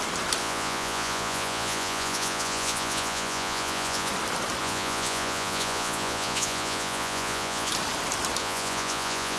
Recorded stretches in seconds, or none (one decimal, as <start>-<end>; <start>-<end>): 0.0-0.4; 4.1-4.6; 7.7-8.4